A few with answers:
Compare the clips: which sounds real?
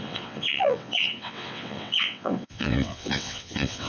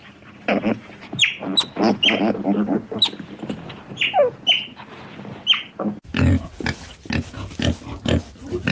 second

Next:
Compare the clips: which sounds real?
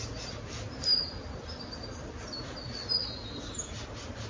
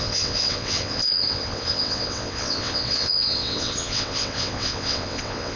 first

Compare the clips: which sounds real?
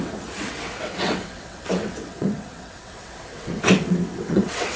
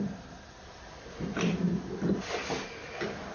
second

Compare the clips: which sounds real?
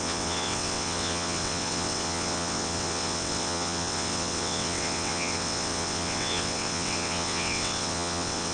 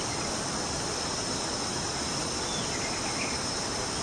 second